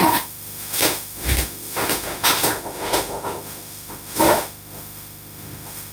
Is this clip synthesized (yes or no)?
yes